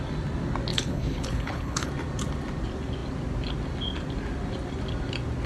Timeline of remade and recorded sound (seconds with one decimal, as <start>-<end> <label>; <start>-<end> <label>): 0.0-0.7 recorded; 0.7-1.9 remade; 1.9-5.5 recorded